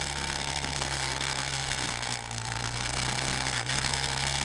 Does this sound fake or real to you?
fake